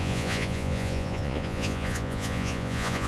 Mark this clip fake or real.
fake